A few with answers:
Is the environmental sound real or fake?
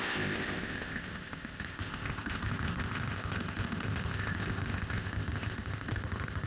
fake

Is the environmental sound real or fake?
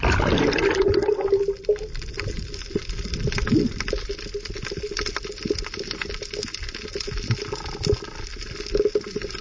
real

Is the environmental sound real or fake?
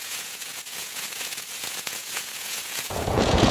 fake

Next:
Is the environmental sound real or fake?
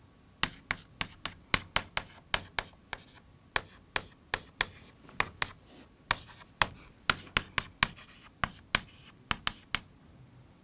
real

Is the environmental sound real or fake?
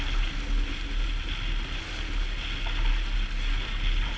real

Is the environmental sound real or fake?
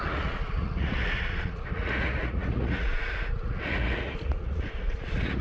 fake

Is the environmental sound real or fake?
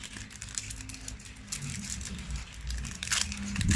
real